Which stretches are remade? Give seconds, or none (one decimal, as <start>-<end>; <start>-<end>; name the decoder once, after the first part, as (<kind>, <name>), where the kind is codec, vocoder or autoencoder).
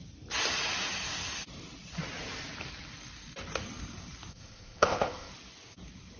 4.3-5.3 (codec, ZipCodec)